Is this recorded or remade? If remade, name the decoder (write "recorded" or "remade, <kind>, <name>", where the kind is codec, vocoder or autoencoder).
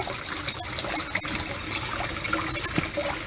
recorded